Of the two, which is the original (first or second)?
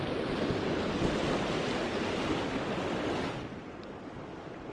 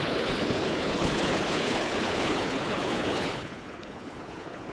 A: first